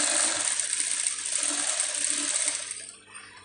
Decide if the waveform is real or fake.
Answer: real